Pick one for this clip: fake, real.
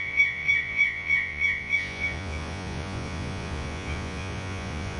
fake